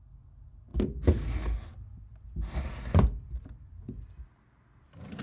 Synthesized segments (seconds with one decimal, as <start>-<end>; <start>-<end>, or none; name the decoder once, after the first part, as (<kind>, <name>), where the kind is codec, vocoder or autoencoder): none